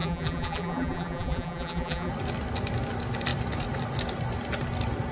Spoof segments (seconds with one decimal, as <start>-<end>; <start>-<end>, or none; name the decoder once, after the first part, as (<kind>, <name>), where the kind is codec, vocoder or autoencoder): 0.0-2.1 (vocoder, BigVGAN v2)